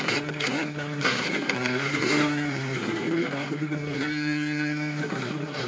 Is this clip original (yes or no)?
no